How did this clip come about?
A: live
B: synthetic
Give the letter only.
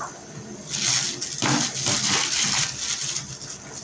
A